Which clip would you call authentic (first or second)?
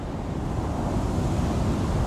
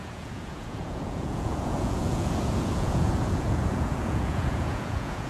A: first